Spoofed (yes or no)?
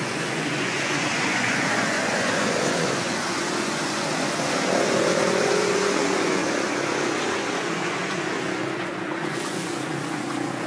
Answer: yes